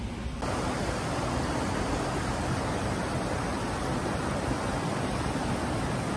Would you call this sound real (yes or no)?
yes